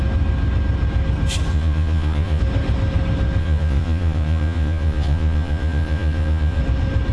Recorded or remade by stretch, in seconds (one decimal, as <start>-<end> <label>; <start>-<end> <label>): 0.0-1.5 recorded; 1.5-2.4 remade; 2.4-3.4 recorded; 3.4-6.6 remade; 6.6-7.1 recorded